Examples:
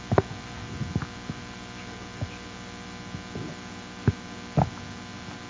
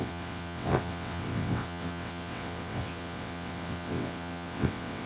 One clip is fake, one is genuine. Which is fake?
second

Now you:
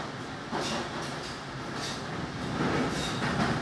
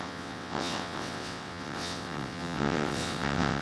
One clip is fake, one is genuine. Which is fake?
second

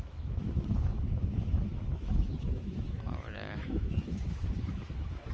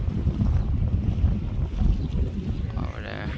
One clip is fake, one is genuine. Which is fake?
first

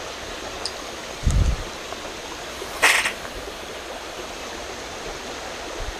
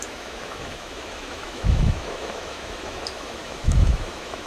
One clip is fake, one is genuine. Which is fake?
second